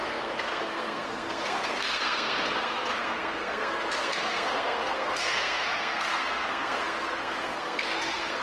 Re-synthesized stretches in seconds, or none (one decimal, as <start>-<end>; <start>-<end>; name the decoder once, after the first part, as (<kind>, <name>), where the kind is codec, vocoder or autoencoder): 0.0-8.4 (codec, SNAC)